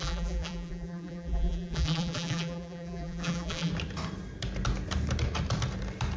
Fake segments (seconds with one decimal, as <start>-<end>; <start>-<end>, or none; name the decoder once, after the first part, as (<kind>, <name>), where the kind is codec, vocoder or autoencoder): 0.0-3.7 (vocoder, BigVGAN v2)